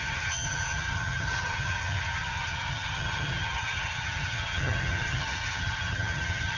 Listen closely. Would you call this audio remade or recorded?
remade